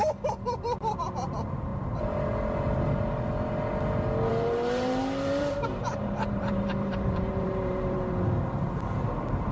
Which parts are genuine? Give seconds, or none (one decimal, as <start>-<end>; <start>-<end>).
0.0-4.3; 8.1-9.5